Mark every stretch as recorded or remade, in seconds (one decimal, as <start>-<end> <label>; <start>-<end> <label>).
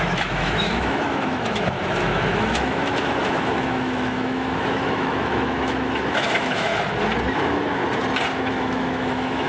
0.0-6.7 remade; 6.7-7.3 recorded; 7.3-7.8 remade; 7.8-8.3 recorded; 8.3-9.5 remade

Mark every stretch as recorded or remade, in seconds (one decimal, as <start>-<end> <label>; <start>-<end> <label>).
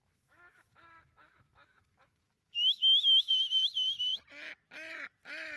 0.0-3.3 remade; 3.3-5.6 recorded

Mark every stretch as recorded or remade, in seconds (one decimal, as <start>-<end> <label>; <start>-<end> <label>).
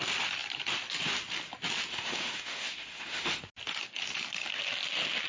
0.0-1.9 recorded; 1.9-3.4 remade; 3.4-5.3 recorded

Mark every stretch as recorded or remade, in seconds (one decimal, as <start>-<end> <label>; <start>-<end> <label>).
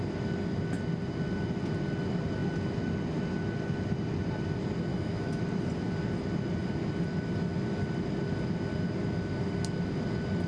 0.0-4.9 recorded; 4.9-5.4 remade; 5.4-10.5 recorded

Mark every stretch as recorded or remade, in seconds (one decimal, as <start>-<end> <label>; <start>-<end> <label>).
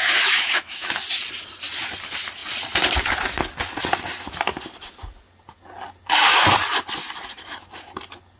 0.0-0.9 remade; 0.9-8.4 recorded